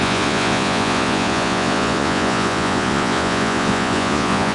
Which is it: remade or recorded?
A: remade